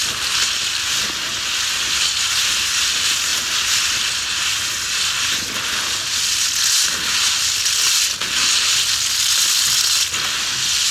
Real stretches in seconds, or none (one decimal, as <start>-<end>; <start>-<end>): 0.0-10.9